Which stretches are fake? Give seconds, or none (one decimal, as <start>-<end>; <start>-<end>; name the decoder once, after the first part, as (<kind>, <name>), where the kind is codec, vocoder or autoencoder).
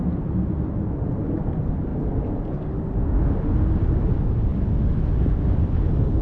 none